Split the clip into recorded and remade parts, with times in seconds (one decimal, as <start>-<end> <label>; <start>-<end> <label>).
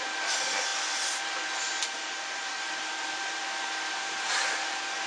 0.0-0.7 recorded; 0.7-3.4 remade; 3.4-5.1 recorded